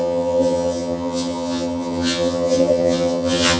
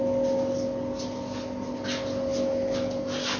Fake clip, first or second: first